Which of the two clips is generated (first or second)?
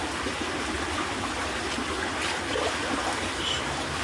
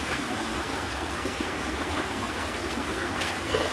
second